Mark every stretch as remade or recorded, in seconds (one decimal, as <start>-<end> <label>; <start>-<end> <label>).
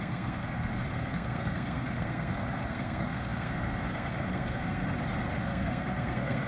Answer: 0.0-4.8 remade; 4.8-5.4 recorded; 5.4-6.5 remade